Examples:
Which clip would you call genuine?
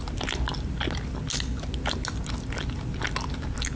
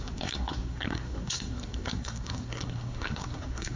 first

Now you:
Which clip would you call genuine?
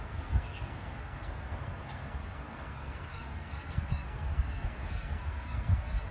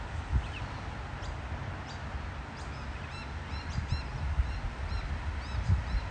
second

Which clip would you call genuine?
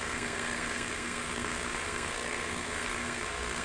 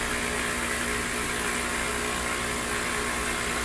second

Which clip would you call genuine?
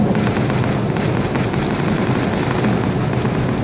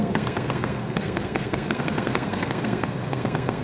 first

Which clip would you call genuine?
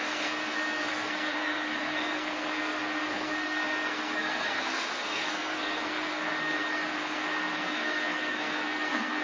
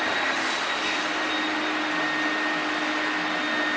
second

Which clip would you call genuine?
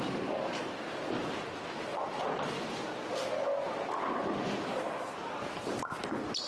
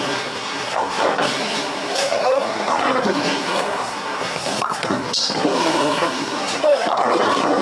first